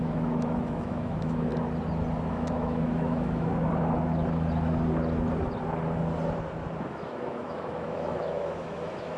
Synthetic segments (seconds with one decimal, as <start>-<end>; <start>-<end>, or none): 0.0-1.5; 2.3-3.5; 6.8-9.2